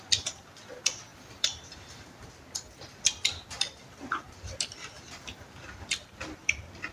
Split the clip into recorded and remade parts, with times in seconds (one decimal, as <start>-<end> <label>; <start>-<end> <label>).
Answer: 0.0-1.1 recorded; 1.1-2.3 remade; 2.3-6.9 recorded

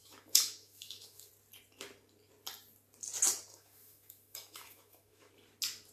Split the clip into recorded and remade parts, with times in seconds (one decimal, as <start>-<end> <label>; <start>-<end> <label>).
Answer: 0.0-1.3 remade; 1.3-3.5 recorded; 3.5-5.3 remade; 5.3-5.9 recorded

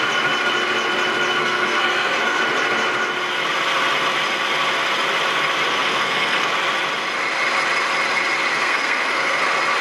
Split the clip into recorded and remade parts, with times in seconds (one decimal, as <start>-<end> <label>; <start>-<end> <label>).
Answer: 0.0-1.4 recorded; 1.4-2.4 remade; 2.4-5.7 recorded; 5.7-6.5 remade; 6.5-8.5 recorded; 8.5-9.4 remade; 9.4-9.8 recorded